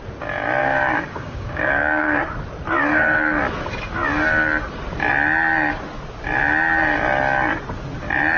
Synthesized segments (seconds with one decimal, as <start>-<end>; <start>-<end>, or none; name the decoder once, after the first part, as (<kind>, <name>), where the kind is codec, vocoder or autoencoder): 0.6-2.2 (codec, DAC)